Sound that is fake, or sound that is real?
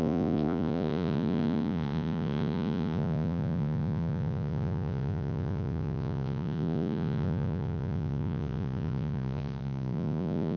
fake